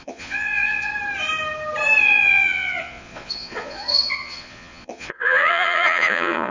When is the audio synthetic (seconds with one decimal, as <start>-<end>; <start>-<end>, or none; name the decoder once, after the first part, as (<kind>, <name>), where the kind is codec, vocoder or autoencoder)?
0.0-0.9 (vocoder, Vocos); 2.0-6.5